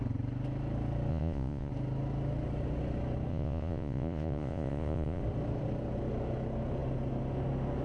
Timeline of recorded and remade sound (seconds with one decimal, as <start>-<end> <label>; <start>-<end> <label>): 0.0-1.1 recorded; 1.1-1.7 remade; 1.7-3.3 recorded; 3.3-5.2 remade; 5.2-7.8 recorded